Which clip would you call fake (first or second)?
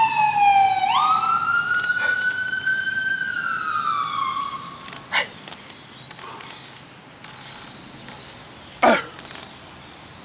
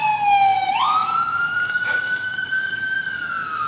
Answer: second